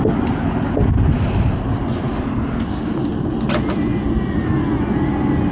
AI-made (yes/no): no